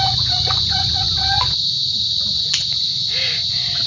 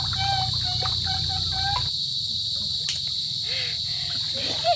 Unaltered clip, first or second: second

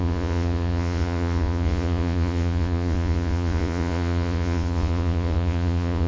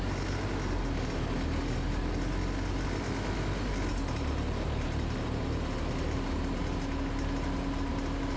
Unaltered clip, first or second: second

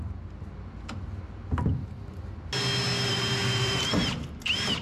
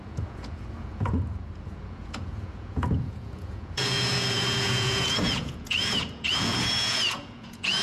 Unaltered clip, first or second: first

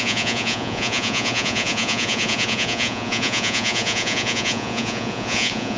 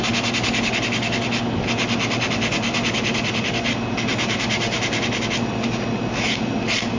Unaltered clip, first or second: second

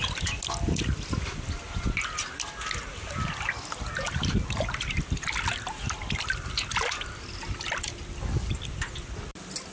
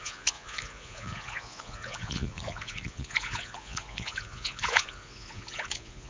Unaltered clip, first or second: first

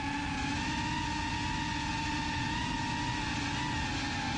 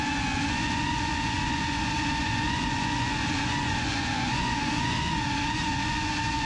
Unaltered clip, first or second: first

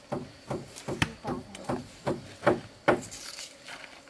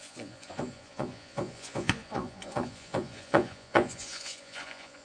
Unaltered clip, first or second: first